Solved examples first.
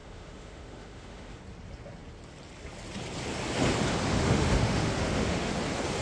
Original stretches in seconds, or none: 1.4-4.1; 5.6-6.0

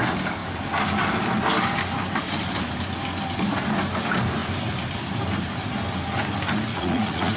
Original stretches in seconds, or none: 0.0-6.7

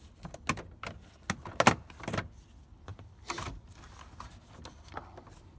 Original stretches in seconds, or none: 0.0-2.9; 5.0-5.6

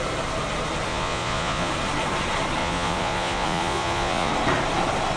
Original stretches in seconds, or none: 0.0-0.9; 1.7-2.6; 4.3-5.2

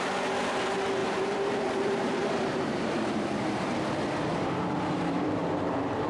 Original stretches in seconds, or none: 0.0-1.0; 3.9-4.3

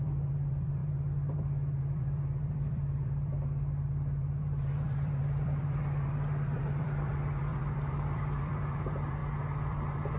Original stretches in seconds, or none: none